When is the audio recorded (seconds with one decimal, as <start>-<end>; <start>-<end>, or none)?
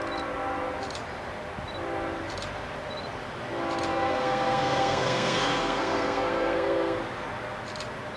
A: 0.0-3.9; 7.0-8.2